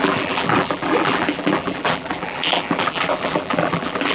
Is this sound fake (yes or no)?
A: yes